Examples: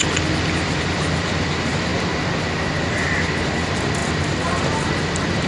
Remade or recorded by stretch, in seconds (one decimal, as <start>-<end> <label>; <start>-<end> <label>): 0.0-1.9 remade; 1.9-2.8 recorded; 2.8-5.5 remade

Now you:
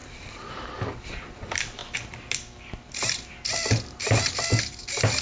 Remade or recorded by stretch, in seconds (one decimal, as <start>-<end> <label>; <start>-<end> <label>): 0.0-5.2 recorded

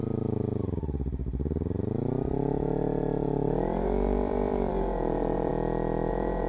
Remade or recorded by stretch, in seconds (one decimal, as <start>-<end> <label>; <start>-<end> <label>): 0.0-5.5 remade; 5.5-6.1 recorded; 6.1-6.5 remade

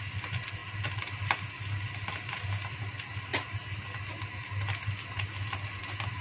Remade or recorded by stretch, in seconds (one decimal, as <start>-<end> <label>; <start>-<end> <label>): 0.0-6.2 recorded